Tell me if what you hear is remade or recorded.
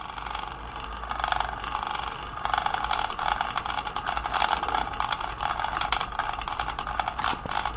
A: recorded